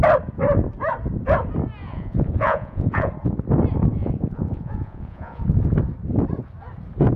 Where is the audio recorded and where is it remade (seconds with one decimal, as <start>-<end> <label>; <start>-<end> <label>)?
0.0-1.8 recorded; 1.8-3.1 remade; 3.1-3.9 recorded; 3.9-5.4 remade; 5.4-7.2 recorded